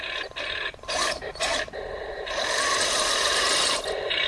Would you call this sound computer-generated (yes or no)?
no